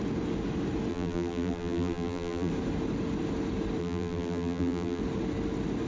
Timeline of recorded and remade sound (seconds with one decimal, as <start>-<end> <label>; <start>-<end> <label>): 0.0-0.9 recorded; 0.9-2.5 remade; 2.5-3.8 recorded; 3.8-5.0 remade; 5.0-5.9 recorded